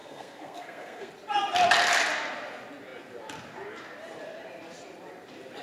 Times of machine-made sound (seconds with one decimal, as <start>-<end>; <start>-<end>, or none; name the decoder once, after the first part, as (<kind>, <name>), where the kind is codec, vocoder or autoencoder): 0.0-1.1 (codec, SNAC)